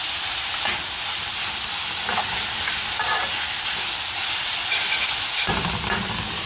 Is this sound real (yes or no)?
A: yes